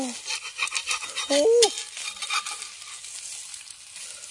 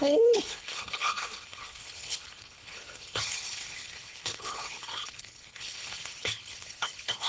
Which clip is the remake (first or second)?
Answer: second